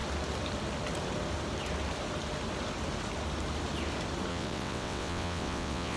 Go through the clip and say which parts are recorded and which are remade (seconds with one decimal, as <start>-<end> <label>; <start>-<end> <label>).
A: 0.0-4.3 recorded; 4.3-6.0 remade